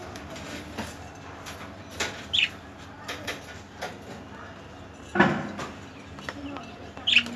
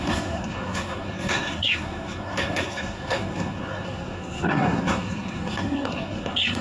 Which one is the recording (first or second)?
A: first